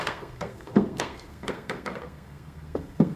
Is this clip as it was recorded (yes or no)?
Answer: no